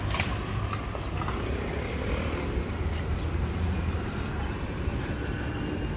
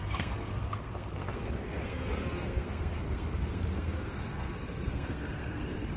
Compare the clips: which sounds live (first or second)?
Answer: first